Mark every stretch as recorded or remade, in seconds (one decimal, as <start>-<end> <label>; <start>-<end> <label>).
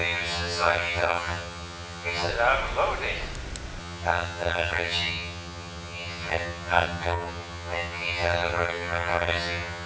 0.0-2.3 remade; 2.3-3.8 recorded; 3.8-9.9 remade